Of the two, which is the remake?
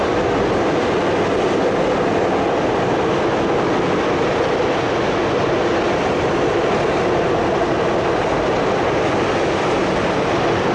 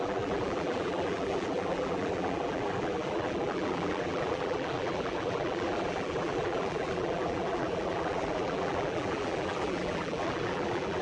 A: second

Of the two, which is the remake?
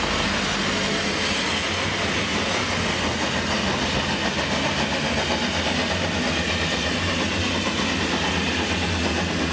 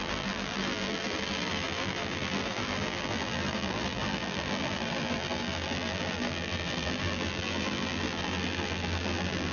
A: second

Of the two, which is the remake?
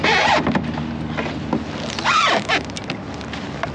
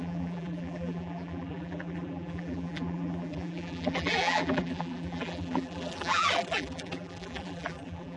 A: second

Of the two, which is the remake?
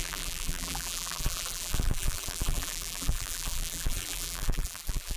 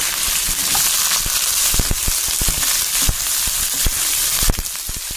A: first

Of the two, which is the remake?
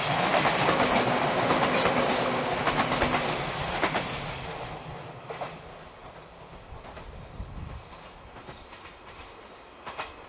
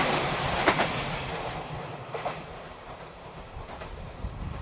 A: second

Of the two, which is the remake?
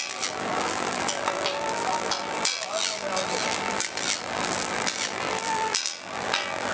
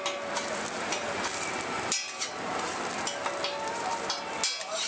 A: first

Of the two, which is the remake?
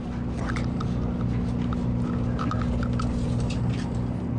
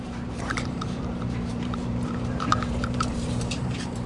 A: second